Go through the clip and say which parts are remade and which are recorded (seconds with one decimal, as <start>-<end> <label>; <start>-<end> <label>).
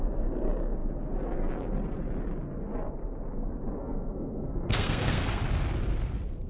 0.0-3.8 recorded; 3.8-5.4 remade; 5.4-6.5 recorded